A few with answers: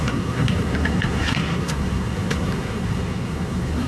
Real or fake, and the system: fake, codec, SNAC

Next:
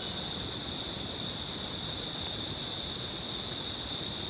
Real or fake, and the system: real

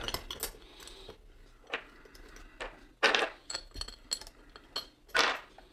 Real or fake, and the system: real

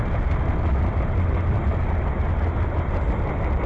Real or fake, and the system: real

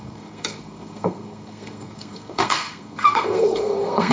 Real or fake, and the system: fake, codec, SNAC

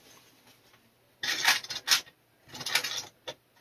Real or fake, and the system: real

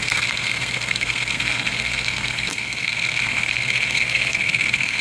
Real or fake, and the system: fake, codec, SNAC